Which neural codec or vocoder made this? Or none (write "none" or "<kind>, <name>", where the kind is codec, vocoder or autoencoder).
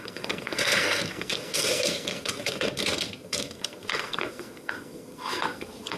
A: codec, SNAC